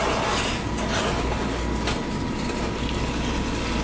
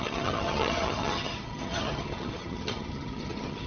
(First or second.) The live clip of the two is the first